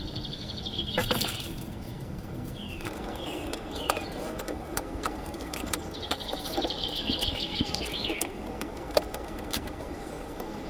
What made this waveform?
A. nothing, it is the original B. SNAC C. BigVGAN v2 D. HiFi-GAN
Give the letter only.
B